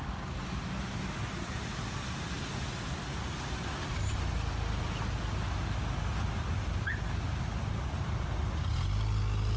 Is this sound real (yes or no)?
yes